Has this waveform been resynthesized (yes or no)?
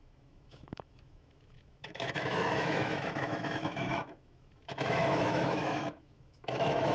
yes